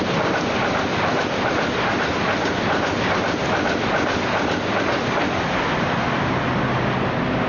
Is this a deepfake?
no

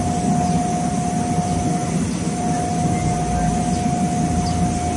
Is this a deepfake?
no